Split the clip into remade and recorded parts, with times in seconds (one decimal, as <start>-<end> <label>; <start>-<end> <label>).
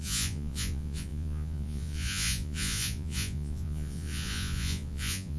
0.0-5.4 remade